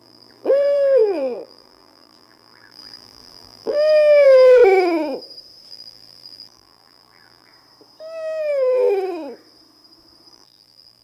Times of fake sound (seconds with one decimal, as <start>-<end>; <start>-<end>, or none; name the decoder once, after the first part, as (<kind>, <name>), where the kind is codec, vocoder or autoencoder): 0.0-4.6 (vocoder, BigVGAN v2); 5.7-7.5; 10.3-11.0